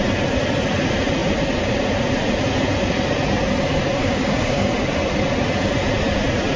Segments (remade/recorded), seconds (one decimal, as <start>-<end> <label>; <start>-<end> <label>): 0.0-4.0 recorded; 4.0-4.7 remade; 4.7-6.6 recorded